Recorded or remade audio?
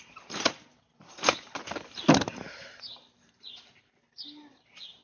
remade